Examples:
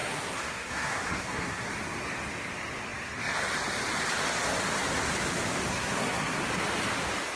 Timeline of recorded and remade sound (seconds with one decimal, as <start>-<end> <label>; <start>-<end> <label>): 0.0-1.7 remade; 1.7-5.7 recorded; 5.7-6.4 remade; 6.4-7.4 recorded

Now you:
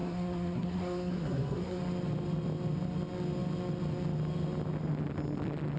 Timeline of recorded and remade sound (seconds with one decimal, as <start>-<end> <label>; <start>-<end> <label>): 0.0-1.8 remade; 1.8-5.8 recorded

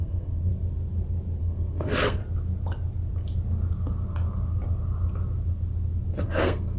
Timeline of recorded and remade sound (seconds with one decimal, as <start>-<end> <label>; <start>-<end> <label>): 0.0-0.5 remade; 0.5-1.4 recorded; 1.4-2.2 remade; 2.2-6.2 recorded; 6.2-6.8 remade